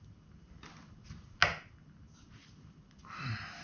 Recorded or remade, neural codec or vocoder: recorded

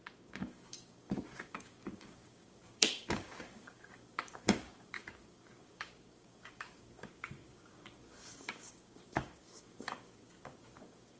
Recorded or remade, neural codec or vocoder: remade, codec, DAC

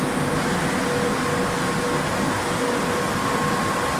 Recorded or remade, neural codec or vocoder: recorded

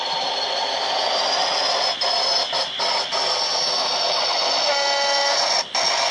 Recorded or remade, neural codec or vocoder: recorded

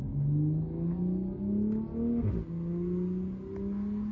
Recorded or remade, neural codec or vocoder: recorded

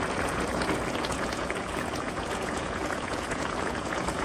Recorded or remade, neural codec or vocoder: remade, vocoder, Vocos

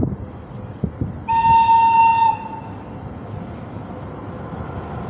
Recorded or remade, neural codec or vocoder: recorded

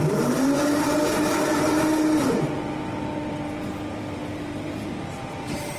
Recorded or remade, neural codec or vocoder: remade, vocoder, BigVGAN v2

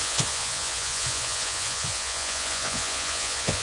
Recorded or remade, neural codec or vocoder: remade, vocoder, Vocos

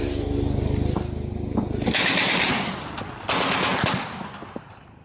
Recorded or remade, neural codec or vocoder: recorded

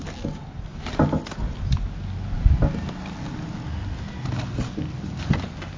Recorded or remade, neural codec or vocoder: recorded